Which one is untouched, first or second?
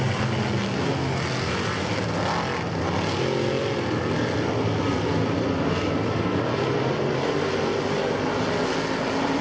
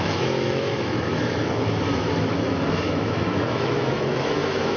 first